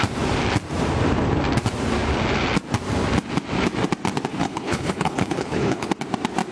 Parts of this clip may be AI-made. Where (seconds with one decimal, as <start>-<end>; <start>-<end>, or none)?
4.3-5.9